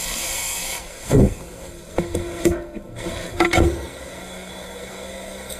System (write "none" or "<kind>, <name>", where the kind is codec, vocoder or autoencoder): codec, SNAC